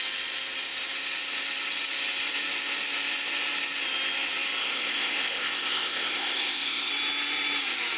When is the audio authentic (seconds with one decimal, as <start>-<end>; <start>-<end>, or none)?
0.0-4.6; 6.9-8.0